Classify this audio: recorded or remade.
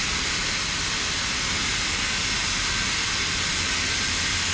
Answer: recorded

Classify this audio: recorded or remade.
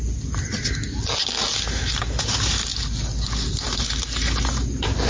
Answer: recorded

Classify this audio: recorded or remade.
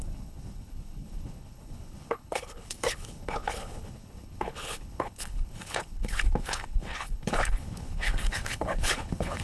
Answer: remade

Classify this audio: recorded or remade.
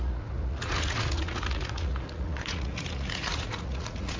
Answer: remade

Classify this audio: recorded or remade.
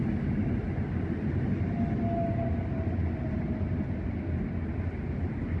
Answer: recorded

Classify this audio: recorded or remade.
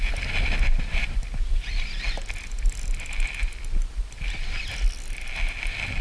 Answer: recorded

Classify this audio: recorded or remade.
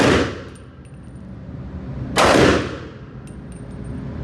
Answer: recorded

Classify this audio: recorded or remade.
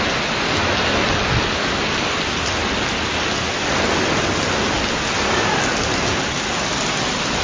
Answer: recorded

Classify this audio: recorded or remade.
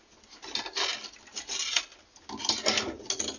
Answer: recorded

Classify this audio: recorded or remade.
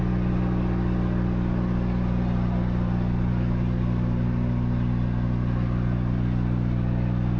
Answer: recorded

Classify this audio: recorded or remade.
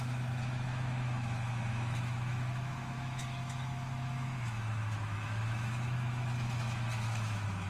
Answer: remade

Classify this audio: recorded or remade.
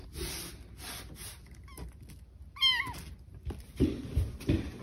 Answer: recorded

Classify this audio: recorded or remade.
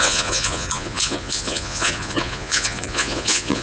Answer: remade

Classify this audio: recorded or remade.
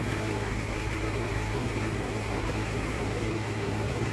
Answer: remade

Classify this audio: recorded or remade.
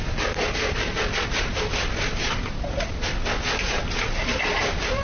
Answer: recorded